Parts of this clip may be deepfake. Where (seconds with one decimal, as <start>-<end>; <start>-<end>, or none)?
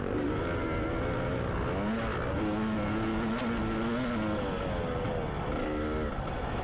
none